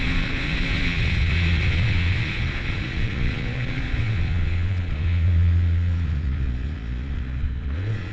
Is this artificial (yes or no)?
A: yes